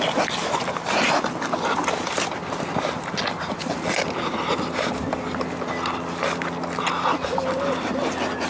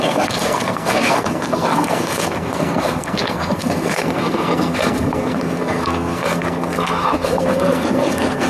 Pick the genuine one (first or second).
first